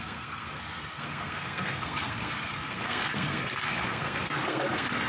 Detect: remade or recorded remade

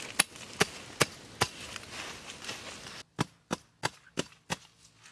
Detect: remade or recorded recorded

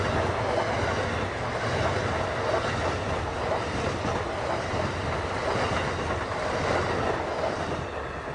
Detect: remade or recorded recorded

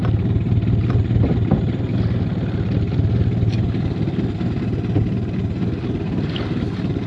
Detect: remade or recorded recorded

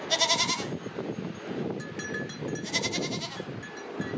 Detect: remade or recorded recorded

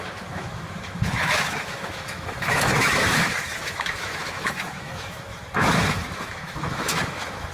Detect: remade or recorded remade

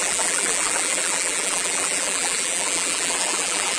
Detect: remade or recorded remade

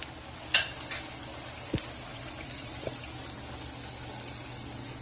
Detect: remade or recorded recorded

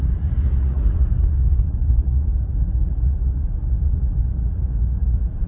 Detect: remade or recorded remade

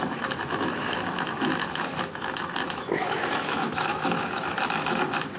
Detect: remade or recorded remade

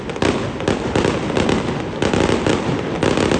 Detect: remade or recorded recorded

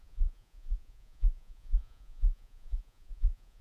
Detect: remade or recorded remade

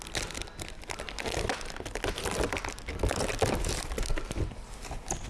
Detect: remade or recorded recorded